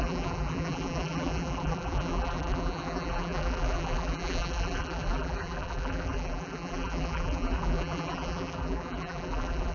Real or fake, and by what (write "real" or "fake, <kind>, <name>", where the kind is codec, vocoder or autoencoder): fake, vocoder, BigVGAN v2